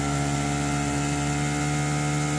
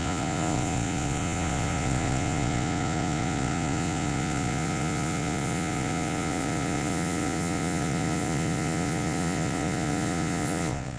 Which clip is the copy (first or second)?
second